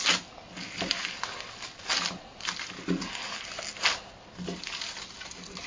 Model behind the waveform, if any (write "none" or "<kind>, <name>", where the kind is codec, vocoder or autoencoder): none